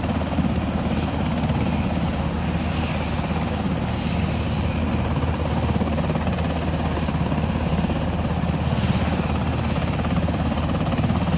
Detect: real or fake real